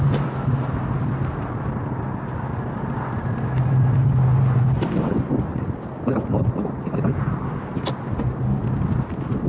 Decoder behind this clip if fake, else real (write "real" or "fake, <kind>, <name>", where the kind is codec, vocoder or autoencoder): real